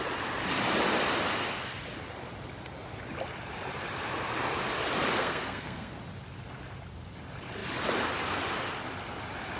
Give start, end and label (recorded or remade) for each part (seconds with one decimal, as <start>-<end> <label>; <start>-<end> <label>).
0.0-5.1 recorded; 5.1-5.9 remade; 5.9-9.6 recorded